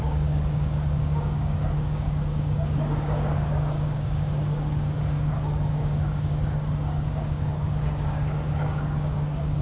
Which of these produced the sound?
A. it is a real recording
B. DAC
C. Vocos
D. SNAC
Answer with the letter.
B